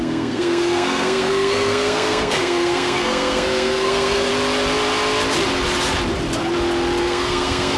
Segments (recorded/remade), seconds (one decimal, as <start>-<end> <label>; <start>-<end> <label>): 0.0-4.3 remade; 4.3-7.0 recorded; 7.0-7.8 remade